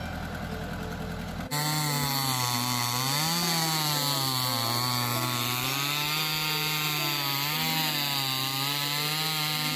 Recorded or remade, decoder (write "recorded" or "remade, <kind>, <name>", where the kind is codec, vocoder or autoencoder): recorded